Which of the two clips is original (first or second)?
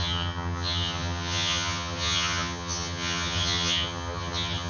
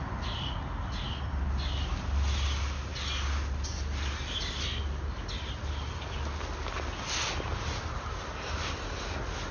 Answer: second